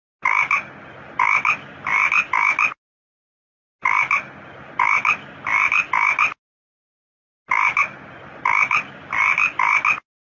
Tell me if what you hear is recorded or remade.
recorded